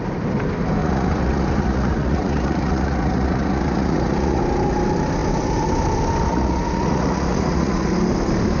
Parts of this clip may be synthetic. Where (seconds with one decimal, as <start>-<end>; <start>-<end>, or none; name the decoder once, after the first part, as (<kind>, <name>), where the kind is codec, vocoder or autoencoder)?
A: 0.8-4.4 (vocoder, Vocos); 6.3-7.9